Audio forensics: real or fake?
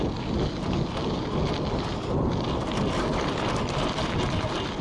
real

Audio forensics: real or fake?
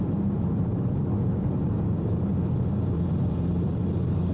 fake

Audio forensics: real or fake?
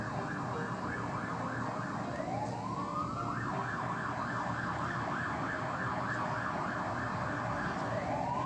real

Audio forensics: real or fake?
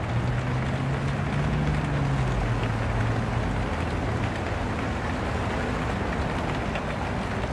real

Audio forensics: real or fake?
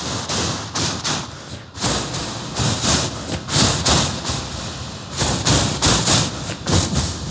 real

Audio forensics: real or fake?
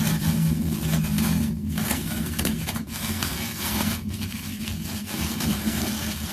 fake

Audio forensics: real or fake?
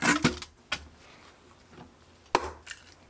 real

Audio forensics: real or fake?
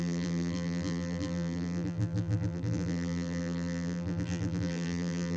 fake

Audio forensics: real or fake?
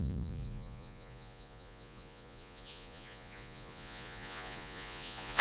fake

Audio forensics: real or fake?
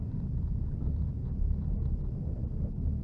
real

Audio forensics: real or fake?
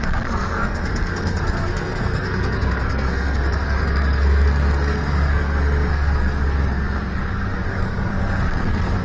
fake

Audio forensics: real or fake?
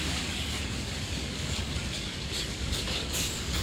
fake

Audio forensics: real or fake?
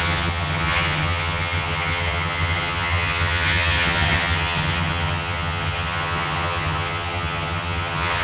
fake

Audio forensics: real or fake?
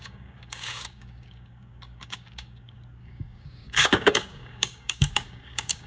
fake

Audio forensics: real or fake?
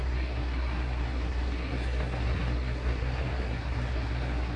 fake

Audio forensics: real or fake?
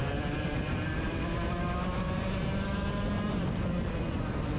real